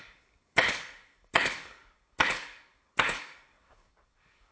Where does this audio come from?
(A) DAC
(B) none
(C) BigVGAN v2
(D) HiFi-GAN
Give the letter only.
A